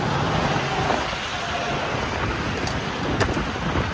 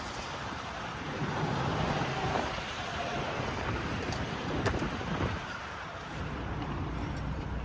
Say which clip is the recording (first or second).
first